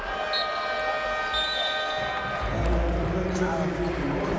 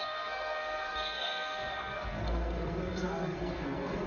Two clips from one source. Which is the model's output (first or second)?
second